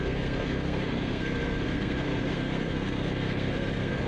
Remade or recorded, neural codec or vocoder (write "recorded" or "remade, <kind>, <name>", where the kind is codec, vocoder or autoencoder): remade, codec, SNAC